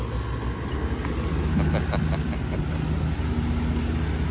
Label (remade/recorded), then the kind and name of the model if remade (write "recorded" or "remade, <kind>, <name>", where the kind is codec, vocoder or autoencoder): recorded